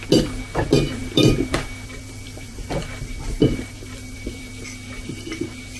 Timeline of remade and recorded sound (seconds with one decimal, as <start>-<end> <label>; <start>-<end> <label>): 0.0-1.0 recorded; 1.0-4.5 remade; 4.5-5.8 recorded